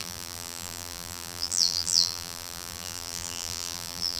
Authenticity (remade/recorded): remade